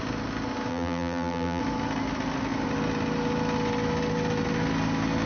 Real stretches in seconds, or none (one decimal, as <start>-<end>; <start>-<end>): 0.0-0.7; 1.6-5.3